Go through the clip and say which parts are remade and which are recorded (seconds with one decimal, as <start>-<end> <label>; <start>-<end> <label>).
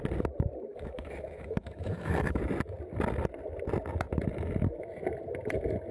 0.0-0.7 recorded; 0.7-2.4 remade; 2.4-5.9 recorded